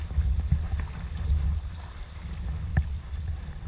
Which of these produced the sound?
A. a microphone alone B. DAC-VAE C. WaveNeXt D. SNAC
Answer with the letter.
A